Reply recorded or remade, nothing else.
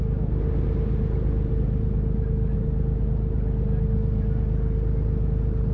recorded